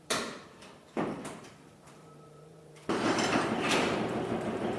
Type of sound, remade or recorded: remade